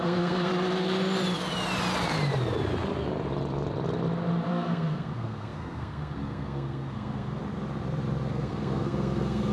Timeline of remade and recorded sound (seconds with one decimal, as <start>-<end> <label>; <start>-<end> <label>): 0.0-0.5 remade; 0.5-4.5 recorded; 4.5-7.4 remade; 7.4-8.3 recorded; 8.3-9.5 remade